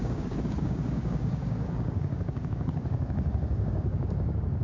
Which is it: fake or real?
fake